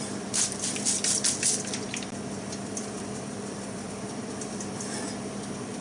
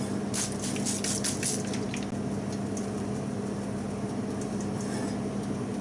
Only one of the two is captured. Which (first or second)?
second